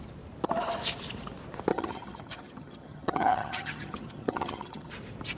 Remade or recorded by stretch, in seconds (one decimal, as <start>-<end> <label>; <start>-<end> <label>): 0.0-1.7 recorded; 1.7-4.9 remade; 4.9-5.4 recorded